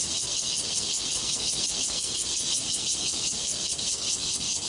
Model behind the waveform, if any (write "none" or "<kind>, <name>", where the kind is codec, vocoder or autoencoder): codec, SNAC